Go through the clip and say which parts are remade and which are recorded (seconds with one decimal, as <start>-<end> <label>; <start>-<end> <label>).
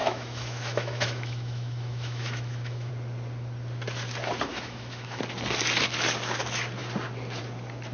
0.0-2.9 remade; 2.9-4.5 recorded; 4.5-5.2 remade; 5.2-7.9 recorded